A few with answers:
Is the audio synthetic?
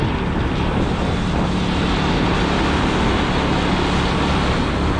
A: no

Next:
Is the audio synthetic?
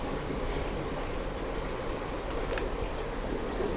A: no